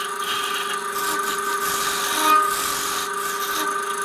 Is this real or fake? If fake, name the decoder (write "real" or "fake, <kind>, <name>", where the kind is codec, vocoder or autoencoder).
real